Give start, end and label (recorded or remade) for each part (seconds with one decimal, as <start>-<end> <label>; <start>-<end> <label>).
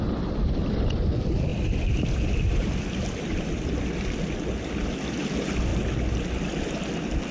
0.0-1.5 recorded; 1.5-4.8 remade; 4.8-5.7 recorded; 5.7-6.3 remade; 6.3-7.3 recorded